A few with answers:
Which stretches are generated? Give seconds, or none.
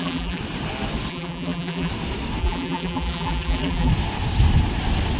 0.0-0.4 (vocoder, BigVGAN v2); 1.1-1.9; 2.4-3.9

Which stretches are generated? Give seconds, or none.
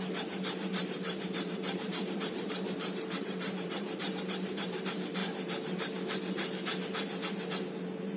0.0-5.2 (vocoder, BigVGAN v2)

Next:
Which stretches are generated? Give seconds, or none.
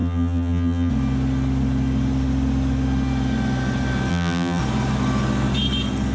0.0-0.9 (vocoder, BigVGAN v2); 4.1-4.6